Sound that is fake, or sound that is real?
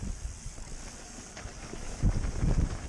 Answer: fake